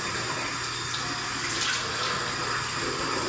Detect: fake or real real